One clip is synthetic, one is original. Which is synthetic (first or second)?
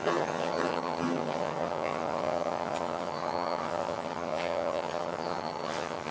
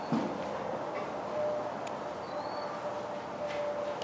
first